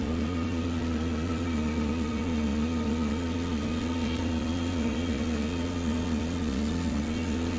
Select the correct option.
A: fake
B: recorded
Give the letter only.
A